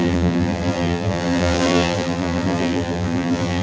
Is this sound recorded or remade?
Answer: remade